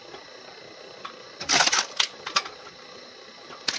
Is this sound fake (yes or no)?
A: no